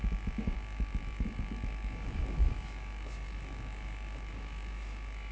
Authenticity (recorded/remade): remade